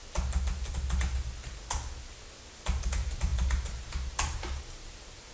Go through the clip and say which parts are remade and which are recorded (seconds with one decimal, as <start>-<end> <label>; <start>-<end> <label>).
0.0-2.8 recorded; 2.8-5.3 remade